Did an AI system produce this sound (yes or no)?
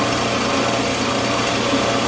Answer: no